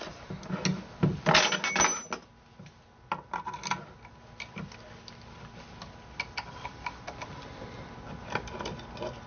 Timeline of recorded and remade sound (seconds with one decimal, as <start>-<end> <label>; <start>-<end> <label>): 0.0-9.3 recorded